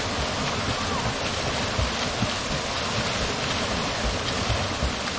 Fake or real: real